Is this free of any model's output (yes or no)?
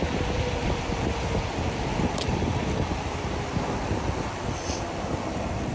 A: yes